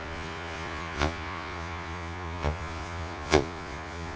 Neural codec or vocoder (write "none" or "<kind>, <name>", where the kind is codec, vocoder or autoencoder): vocoder, Vocos